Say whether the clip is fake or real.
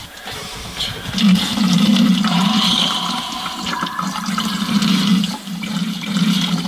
fake